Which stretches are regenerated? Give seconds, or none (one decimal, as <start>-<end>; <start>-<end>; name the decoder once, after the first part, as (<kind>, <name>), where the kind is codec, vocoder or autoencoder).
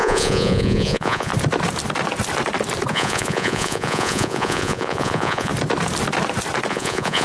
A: 0.0-1.3 (vocoder, Vocos); 2.9-5.5; 6.7-7.2